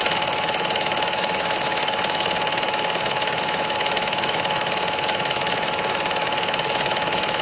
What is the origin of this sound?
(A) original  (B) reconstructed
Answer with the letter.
B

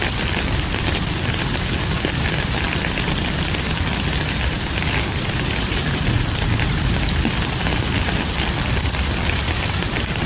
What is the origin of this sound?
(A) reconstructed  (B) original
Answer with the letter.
A